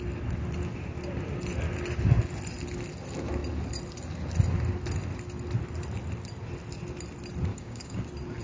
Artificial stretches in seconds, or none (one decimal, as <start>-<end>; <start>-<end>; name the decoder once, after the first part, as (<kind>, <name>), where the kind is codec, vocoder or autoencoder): 7.5-8.0 (codec, DAC)